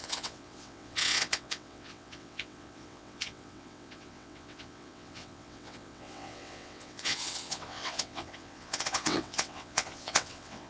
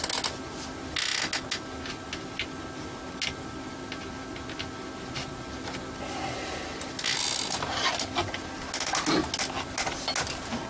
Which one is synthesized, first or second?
first